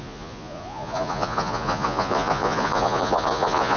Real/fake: fake